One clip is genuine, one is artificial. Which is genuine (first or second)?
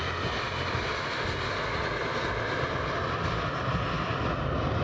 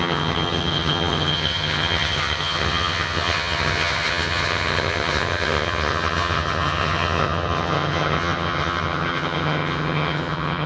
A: first